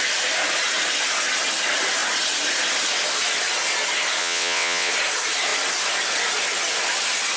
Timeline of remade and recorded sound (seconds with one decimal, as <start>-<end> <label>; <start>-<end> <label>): 0.0-4.2 recorded; 4.2-4.9 remade; 4.9-7.4 recorded